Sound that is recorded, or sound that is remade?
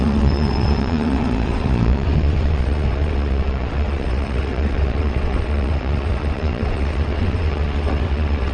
remade